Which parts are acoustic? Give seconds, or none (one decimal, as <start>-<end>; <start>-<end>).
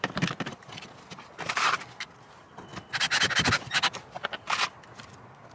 0.0-5.5